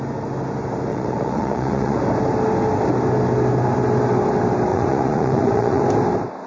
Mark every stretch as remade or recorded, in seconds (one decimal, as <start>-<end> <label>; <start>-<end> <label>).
0.0-0.9 recorded; 0.9-2.0 remade; 2.0-4.7 recorded; 4.7-5.8 remade; 5.8-6.5 recorded